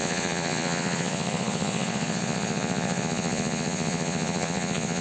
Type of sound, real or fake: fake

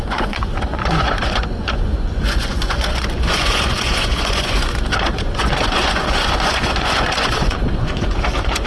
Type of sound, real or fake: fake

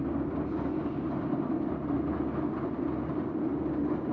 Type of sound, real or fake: real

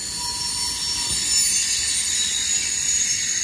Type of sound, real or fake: real